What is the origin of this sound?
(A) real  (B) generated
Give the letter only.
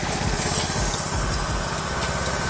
A